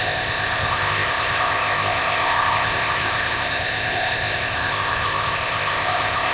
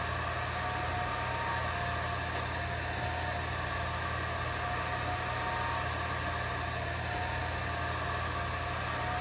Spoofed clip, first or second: first